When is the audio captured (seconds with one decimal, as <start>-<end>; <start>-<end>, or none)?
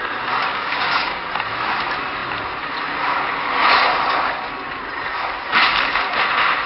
0.0-0.5; 1.2-6.7